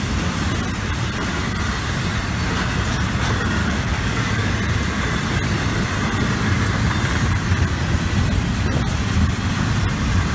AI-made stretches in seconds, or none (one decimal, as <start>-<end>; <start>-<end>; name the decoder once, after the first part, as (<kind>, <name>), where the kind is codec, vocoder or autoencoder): 3.6-4.5 (codec, DAC)